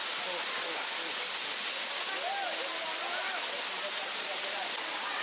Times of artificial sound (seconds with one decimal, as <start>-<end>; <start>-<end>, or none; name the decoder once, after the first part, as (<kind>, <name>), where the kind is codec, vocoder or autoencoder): none